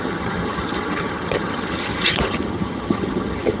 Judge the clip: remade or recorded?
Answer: remade